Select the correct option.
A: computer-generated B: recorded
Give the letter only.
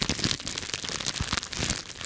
B